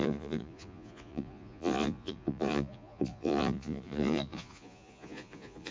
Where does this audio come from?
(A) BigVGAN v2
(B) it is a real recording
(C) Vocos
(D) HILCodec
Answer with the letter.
C